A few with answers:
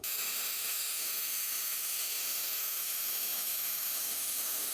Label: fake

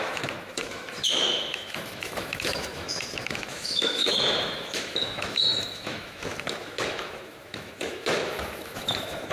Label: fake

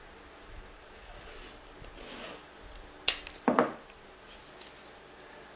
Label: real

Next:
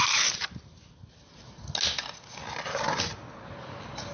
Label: real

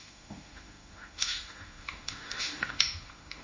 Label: fake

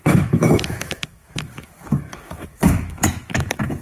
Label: fake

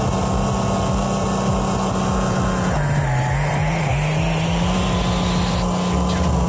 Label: real